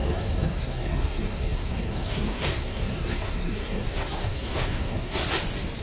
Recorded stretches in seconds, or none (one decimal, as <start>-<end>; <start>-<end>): 5.2-5.8